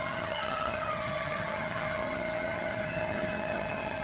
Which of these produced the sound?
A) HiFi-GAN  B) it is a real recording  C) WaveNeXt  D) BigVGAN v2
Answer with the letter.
A